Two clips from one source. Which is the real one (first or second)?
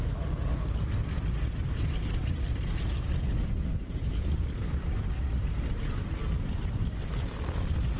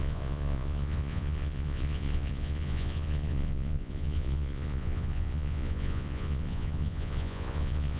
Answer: first